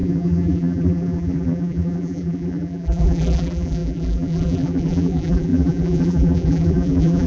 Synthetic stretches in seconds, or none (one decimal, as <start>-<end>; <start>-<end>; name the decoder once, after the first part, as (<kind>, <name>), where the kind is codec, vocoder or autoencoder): 0.0-7.3 (vocoder, BigVGAN v2)